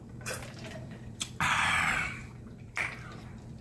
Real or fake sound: fake